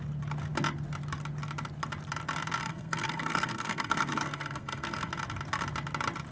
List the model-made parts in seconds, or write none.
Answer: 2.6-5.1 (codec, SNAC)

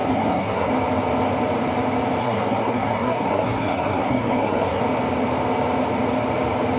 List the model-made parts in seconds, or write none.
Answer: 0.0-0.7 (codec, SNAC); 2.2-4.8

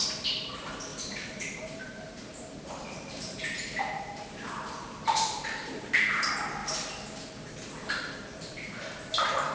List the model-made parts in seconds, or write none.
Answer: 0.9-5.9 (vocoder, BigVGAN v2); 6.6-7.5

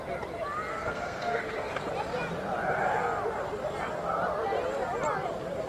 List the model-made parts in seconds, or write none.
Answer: 0.7-1.4 (codec, SNAC)

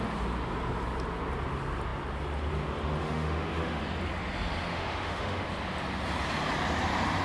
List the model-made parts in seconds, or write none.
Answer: 3.0-3.8 (autoencoder, DAC-VAE); 4.7-5.4